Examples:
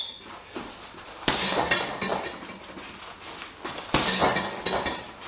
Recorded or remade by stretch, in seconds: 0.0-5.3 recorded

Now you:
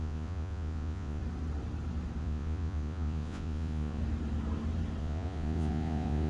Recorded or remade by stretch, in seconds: 0.0-1.2 remade; 1.2-2.2 recorded; 2.2-4.0 remade; 4.0-5.0 recorded; 5.0-6.3 remade